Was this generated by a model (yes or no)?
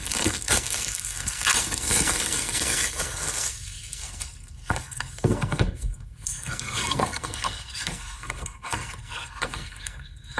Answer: yes